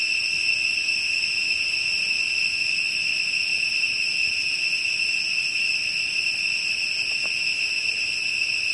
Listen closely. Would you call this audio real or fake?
real